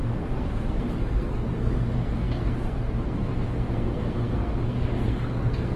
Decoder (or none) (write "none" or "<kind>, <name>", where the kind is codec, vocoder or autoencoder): codec, SNAC